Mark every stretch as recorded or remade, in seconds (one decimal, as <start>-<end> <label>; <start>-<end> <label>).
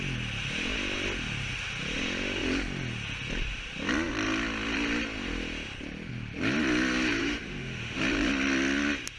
0.0-7.2 recorded; 7.2-8.0 remade; 8.0-9.2 recorded